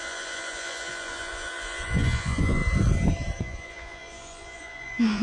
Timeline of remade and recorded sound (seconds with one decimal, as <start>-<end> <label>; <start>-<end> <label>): 0.0-2.6 remade; 2.6-3.4 recorded; 3.4-5.2 remade